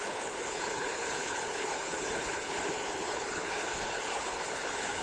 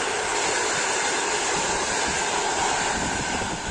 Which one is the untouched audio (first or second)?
second